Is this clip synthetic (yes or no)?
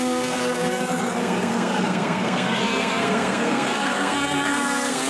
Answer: yes